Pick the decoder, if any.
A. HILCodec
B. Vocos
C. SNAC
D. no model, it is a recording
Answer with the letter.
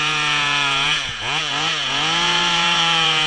B